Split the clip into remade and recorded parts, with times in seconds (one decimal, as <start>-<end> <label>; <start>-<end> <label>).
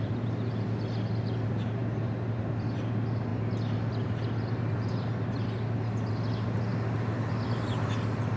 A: 0.0-8.4 recorded